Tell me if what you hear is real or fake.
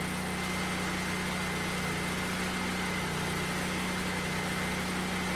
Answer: real